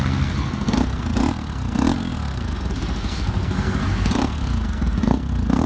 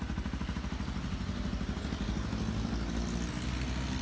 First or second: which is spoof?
first